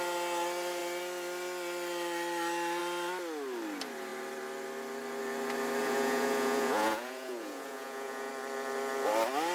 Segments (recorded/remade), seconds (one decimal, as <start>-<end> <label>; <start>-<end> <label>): 0.0-5.8 recorded; 5.8-8.3 remade; 8.3-9.5 recorded